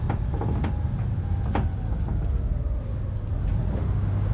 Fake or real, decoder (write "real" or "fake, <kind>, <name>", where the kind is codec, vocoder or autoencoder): real